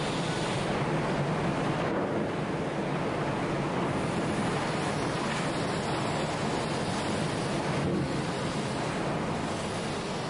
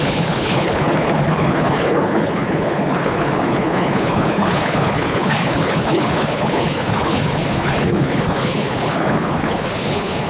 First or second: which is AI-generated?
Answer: second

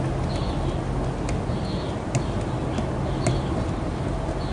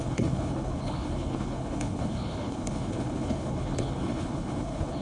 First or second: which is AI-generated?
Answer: second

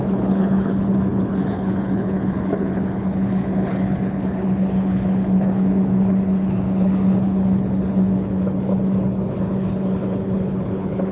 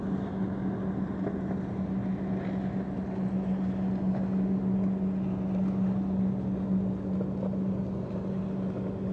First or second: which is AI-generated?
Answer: first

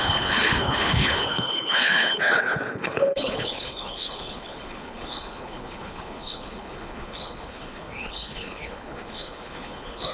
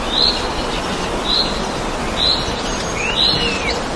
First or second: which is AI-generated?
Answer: first